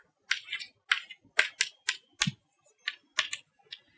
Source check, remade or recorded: recorded